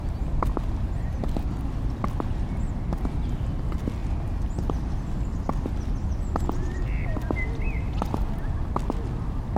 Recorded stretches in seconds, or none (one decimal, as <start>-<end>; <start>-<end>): 0.0-9.6

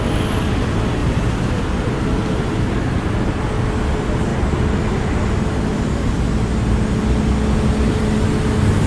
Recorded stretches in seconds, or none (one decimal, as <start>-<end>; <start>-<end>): 0.0-1.0; 3.3-8.9

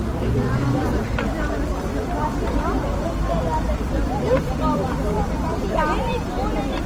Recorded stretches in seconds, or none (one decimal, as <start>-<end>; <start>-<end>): none

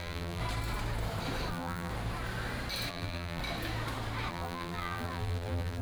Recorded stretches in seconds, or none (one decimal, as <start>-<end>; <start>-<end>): 0.4-1.5; 1.9-2.9; 3.4-4.3

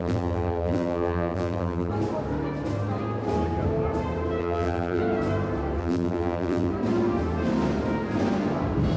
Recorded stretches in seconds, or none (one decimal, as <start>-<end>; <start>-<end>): 1.9-4.4; 5.0-5.8; 6.7-9.0

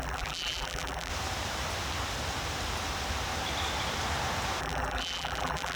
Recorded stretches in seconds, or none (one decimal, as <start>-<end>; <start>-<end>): 1.1-4.6

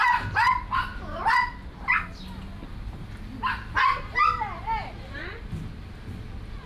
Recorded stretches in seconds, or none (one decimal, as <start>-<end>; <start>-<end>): 0.0-6.7

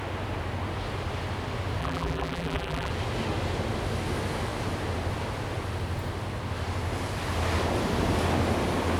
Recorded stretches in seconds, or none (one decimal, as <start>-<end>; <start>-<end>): 0.0-1.8; 2.9-9.0